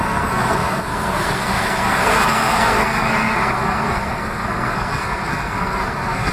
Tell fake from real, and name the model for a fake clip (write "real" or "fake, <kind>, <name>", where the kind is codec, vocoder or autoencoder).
fake, codec, SNAC